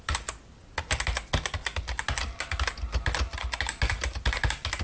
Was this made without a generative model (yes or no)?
yes